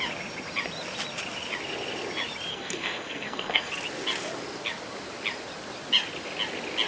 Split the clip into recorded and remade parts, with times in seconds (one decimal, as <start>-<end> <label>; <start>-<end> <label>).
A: 0.0-2.5 recorded; 2.5-3.7 remade; 3.7-6.9 recorded